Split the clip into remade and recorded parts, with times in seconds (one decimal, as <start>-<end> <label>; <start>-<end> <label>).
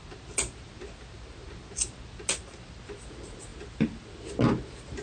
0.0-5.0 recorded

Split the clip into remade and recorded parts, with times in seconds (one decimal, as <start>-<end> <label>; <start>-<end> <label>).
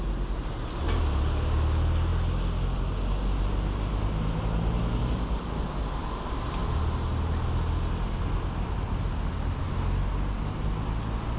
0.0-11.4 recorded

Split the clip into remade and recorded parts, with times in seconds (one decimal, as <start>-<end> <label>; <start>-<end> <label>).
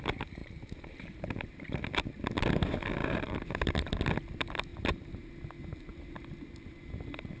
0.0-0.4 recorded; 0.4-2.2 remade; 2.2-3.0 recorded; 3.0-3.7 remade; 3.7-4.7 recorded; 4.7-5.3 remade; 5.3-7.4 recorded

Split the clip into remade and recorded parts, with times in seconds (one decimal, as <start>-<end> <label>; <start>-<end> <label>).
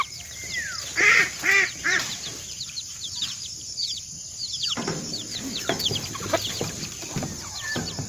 0.0-0.4 remade; 0.4-1.0 recorded; 1.0-8.1 remade